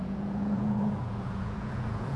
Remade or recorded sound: remade